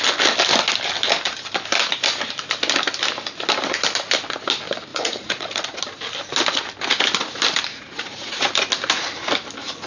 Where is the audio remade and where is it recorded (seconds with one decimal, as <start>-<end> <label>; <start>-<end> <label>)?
0.0-4.9 recorded; 4.9-5.8 remade; 5.8-7.7 recorded; 7.7-8.5 remade; 8.5-9.9 recorded